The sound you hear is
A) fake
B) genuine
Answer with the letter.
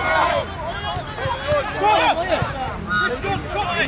B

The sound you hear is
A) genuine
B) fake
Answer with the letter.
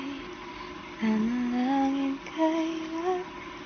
A